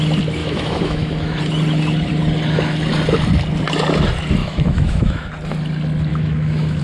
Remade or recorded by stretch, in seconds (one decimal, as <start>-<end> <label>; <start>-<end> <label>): 0.0-0.4 recorded; 0.4-1.4 remade; 1.4-4.4 recorded; 4.4-5.3 remade; 5.3-6.1 recorded; 6.1-6.8 remade